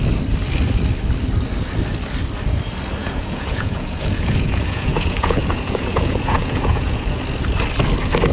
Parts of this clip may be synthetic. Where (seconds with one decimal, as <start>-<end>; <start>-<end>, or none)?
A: 3.0-7.2